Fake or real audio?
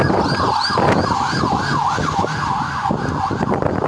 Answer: real